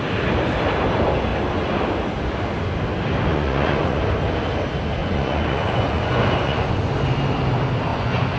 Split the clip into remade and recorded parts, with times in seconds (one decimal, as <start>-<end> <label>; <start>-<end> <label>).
0.0-3.3 recorded; 3.3-4.0 remade; 4.0-5.0 recorded; 5.0-6.9 remade; 6.9-7.9 recorded; 7.9-8.4 remade